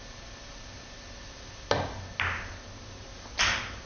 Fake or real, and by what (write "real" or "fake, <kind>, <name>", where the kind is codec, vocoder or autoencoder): real